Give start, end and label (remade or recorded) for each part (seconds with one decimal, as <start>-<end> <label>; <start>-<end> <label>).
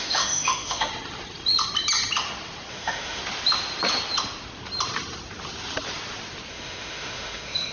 0.0-0.9 remade; 0.9-2.7 recorded; 2.7-3.2 remade; 3.2-6.5 recorded; 6.5-7.7 remade